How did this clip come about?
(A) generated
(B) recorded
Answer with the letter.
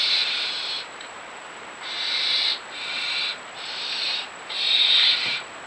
A